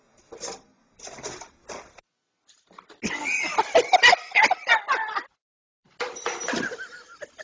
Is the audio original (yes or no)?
yes